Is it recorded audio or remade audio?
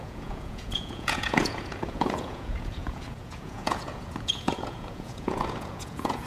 remade